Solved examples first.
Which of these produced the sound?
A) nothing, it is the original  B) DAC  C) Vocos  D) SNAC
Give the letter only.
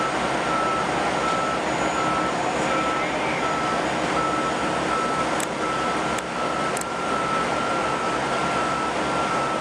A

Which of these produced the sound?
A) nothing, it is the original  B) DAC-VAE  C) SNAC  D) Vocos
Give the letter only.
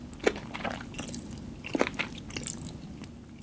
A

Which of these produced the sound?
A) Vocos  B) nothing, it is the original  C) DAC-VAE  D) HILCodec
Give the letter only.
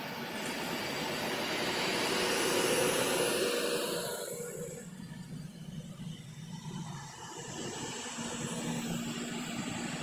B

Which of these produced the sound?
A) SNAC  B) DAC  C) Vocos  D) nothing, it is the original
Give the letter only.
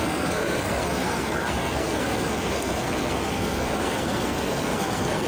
A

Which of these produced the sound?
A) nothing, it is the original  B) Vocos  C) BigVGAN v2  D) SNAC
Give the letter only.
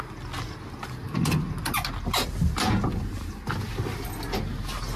A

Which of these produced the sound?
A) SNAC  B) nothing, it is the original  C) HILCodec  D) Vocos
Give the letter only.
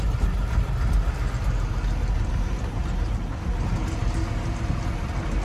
B